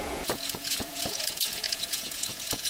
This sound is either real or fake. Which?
fake